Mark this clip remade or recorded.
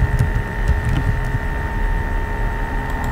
recorded